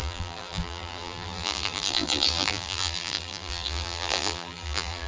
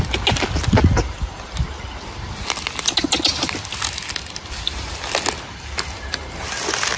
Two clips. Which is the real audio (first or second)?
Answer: second